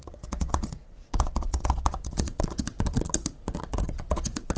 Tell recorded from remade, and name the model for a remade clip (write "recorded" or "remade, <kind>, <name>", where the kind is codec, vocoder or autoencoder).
remade, vocoder, Vocos